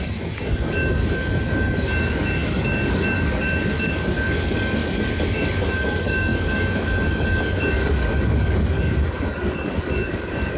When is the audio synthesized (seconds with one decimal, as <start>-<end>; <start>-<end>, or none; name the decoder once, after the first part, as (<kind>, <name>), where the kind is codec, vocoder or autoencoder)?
0.0-10.6 (codec, DAC)